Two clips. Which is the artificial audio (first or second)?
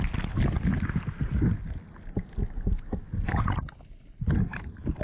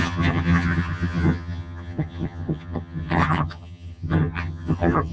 second